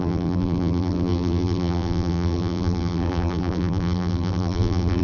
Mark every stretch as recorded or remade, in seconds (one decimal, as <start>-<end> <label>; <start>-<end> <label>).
0.0-5.0 remade

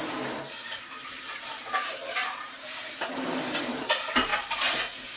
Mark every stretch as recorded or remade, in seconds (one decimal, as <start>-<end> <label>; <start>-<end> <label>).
0.0-4.3 remade; 4.3-5.2 recorded

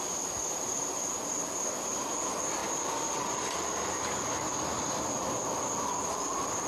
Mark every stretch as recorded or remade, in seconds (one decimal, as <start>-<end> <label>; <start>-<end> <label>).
0.0-2.6 recorded; 2.6-3.9 remade; 3.9-6.7 recorded

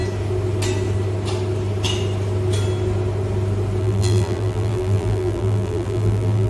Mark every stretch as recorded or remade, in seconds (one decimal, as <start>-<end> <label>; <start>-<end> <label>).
0.0-3.8 recorded; 3.8-6.5 remade

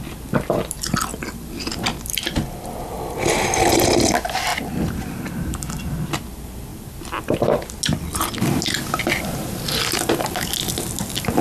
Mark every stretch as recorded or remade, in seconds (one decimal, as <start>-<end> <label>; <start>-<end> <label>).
0.0-1.1 recorded; 1.1-1.7 remade; 1.7-4.5 recorded; 4.5-5.8 remade; 5.8-11.4 recorded

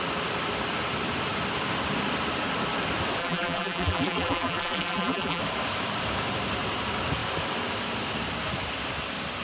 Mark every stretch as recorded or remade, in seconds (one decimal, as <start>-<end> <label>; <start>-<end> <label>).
0.0-3.2 recorded; 3.2-5.4 remade; 5.4-9.4 recorded

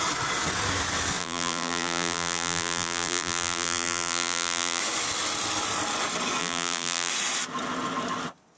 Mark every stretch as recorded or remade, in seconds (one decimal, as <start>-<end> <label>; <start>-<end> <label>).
0.0-1.2 recorded; 1.2-4.8 remade; 4.8-6.4 recorded; 6.4-7.1 remade; 7.1-8.6 recorded

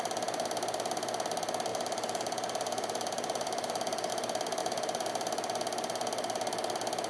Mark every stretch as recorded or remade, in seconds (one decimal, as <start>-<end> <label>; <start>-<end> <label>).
0.0-1.7 recorded; 1.7-4.1 remade; 4.1-4.6 recorded; 4.6-5.1 remade; 5.1-7.1 recorded